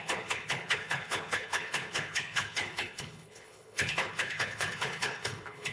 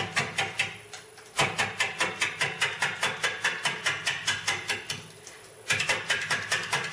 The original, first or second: second